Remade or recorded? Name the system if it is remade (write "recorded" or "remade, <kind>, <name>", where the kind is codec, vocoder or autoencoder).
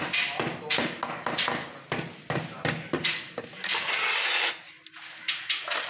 recorded